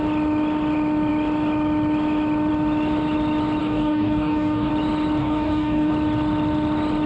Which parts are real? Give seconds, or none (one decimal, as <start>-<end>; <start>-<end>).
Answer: 0.0-3.6; 4.7-5.2; 5.9-7.1